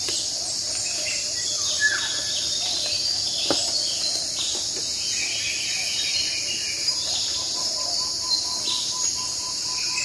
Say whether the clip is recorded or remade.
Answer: recorded